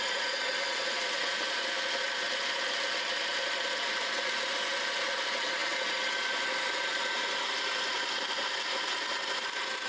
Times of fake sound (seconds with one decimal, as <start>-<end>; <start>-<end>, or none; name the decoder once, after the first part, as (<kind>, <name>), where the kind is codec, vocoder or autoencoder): none